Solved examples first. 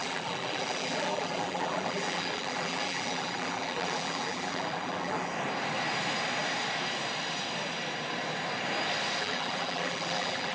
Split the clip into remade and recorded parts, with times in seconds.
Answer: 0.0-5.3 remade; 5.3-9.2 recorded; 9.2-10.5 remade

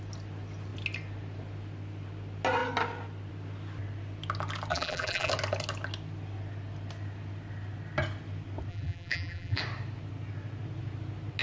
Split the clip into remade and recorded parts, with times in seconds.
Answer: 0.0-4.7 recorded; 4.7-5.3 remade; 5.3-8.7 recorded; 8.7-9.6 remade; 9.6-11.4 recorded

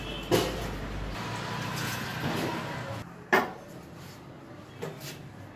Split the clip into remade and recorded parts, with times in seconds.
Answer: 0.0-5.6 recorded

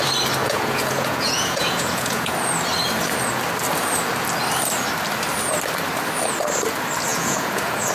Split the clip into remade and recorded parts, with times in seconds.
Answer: 0.0-0.4 recorded; 0.4-2.3 remade; 2.3-7.1 recorded; 7.1-7.9 remade

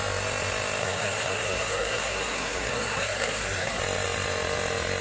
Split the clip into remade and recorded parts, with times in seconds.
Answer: 0.0-0.8 recorded; 0.8-3.8 remade; 3.8-5.0 recorded

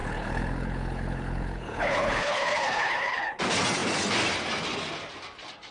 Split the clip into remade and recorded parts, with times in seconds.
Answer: 0.0-3.4 remade; 3.4-5.7 recorded

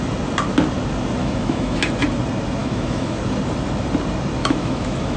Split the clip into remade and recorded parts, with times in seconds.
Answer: 0.0-1.2 recorded; 1.2-1.8 remade; 1.8-2.6 recorded; 2.6-3.2 remade; 3.2-4.4 recorded; 4.4-5.2 remade